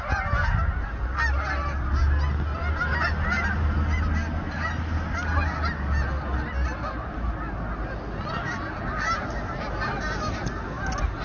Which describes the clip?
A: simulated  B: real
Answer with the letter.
B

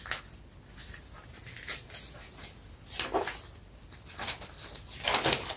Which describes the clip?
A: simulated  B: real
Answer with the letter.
B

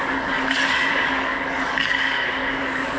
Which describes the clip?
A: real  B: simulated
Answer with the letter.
B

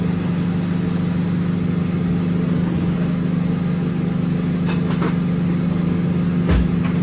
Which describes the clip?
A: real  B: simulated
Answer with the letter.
A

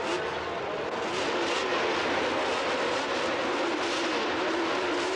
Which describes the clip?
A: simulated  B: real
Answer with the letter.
B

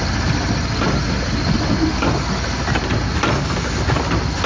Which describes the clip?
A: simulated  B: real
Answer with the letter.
B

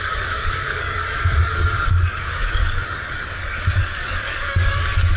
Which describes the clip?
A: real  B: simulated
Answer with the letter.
B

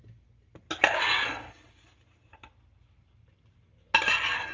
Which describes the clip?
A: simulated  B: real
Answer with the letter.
B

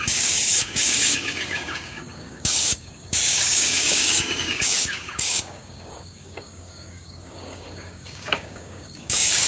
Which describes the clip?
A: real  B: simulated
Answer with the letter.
B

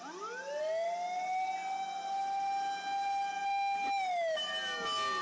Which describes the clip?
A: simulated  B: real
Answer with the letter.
B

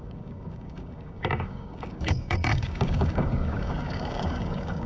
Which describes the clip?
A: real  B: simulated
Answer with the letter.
B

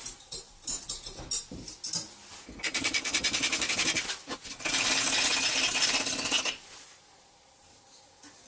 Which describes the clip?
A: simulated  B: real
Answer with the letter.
B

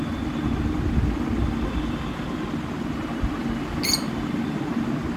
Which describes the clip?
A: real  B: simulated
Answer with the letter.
A